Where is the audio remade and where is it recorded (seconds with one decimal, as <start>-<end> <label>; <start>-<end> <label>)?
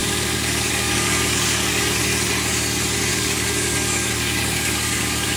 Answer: 0.0-2.0 remade; 2.0-3.1 recorded; 3.1-5.4 remade